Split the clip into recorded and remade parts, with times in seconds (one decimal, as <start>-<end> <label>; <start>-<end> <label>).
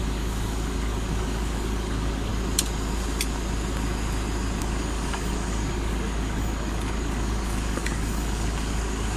0.0-2.3 remade; 2.3-4.6 recorded; 4.6-9.2 remade